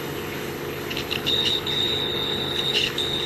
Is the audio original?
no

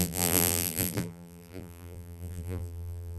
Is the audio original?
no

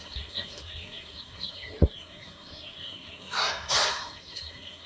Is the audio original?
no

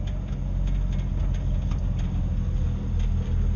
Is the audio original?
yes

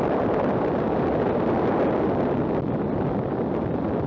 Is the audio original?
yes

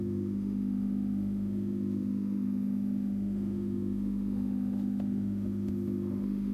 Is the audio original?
no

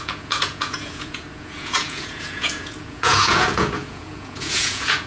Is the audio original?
no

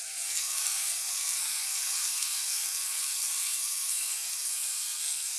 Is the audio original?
no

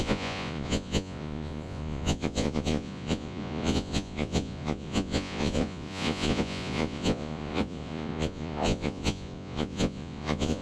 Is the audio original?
no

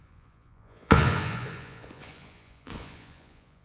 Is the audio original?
no